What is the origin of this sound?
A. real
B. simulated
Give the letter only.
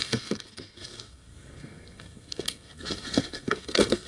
B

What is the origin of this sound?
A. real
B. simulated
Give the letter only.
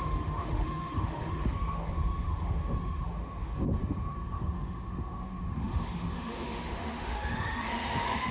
B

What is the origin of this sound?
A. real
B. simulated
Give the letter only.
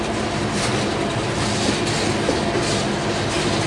A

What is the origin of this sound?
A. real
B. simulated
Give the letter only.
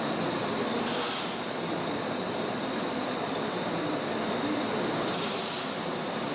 A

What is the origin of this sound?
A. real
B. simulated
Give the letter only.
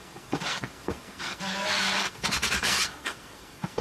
B